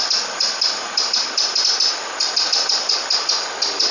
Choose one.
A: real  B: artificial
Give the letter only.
A